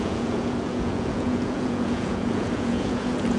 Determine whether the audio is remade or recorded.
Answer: remade